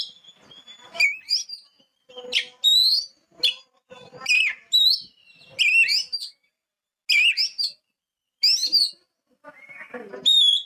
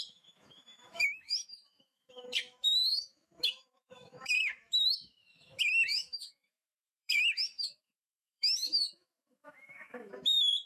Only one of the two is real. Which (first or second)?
first